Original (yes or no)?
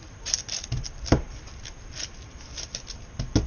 yes